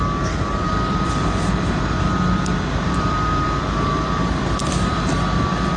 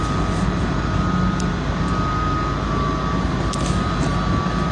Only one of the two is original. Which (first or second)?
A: second